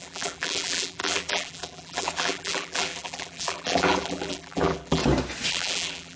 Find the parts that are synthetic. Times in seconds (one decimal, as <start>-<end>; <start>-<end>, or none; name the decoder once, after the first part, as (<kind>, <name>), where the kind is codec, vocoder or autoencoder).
0.0-5.0 (vocoder, BigVGAN v2); 5.5-6.2